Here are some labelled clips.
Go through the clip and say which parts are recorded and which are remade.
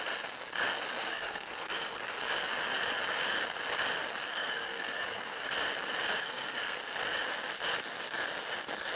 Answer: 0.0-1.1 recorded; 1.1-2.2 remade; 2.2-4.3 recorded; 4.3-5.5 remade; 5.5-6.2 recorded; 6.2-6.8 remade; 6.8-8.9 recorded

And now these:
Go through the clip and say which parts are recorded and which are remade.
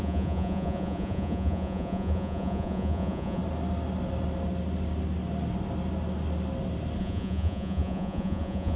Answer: 0.0-3.4 remade; 3.4-7.0 recorded; 7.0-8.8 remade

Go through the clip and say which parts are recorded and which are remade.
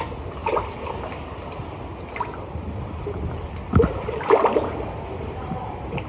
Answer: 0.0-6.1 recorded